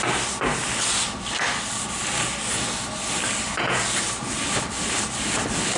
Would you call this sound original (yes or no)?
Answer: yes